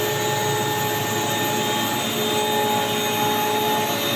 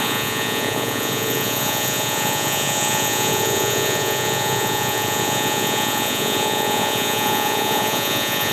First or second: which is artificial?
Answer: second